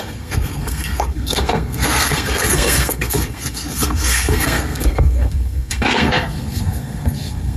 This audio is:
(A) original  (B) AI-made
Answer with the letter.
B